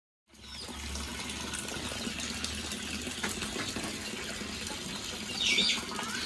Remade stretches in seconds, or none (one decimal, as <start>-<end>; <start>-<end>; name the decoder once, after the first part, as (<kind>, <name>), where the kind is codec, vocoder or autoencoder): none